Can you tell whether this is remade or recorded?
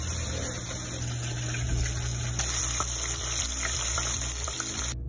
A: recorded